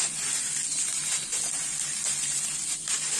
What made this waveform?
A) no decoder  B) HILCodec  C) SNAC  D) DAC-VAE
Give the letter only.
A